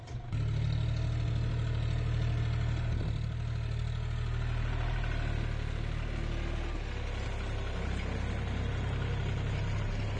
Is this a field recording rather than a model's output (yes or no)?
yes